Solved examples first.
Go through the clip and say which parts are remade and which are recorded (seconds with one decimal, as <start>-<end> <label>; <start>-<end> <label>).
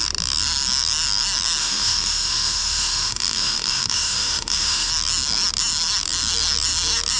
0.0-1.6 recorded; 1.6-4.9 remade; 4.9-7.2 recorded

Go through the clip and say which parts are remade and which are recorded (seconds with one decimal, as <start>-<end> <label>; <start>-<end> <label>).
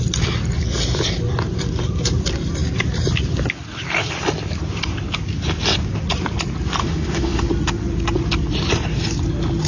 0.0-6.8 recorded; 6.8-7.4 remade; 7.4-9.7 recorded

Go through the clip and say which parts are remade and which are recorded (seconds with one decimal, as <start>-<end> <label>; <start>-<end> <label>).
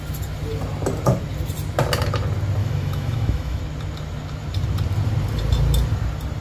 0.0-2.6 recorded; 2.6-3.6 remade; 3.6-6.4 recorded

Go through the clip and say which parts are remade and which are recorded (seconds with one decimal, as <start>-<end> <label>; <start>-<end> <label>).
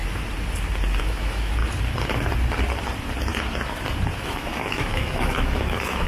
0.0-1.0 recorded; 1.0-1.6 remade; 1.6-4.2 recorded; 4.2-6.1 remade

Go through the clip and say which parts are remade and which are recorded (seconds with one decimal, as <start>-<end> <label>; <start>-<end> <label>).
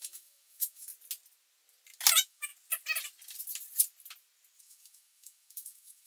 0.0-0.9 remade; 0.9-2.1 recorded; 2.1-2.5 remade; 2.5-4.6 recorded; 4.6-6.1 remade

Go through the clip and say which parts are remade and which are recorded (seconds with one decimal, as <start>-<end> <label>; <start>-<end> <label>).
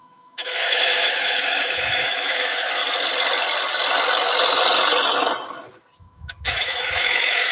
0.0-2.8 remade; 2.8-6.0 recorded; 6.0-7.5 remade